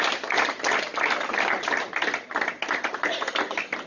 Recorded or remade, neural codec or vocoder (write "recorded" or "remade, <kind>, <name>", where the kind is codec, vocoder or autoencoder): recorded